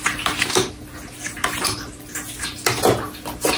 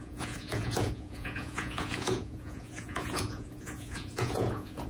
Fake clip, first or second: second